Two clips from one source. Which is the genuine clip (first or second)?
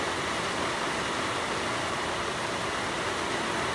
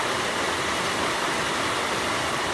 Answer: first